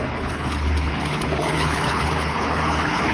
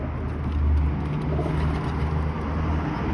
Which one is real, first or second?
second